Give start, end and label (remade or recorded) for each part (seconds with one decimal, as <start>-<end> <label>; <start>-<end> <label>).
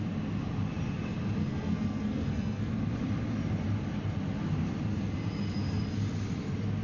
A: 0.0-1.4 recorded; 1.4-2.7 remade; 2.7-6.8 recorded